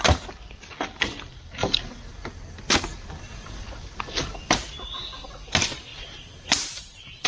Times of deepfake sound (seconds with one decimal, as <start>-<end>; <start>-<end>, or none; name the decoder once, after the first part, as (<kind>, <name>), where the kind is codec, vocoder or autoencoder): none